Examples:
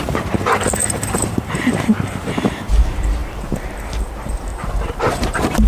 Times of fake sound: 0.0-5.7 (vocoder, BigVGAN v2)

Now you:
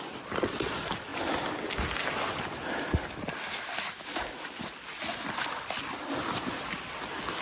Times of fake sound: none

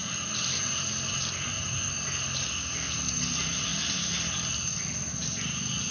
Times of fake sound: none

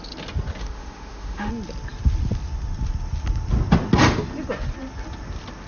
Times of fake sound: 0.6-1.5 (autoencoder, DAC-VAE)

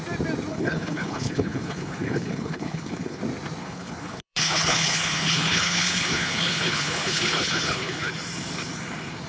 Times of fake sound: 0.5-3.2 (codec, HILCodec); 3.6-8.1

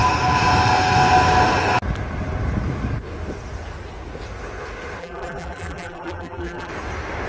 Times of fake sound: 5.0-6.7 (vocoder, BigVGAN v2)